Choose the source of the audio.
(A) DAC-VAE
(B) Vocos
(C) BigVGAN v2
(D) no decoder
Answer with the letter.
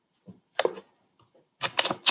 D